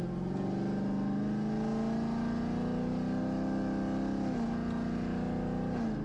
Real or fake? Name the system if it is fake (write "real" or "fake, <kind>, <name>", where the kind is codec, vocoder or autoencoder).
real